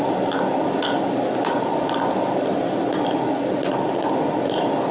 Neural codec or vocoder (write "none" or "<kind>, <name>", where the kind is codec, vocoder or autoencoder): none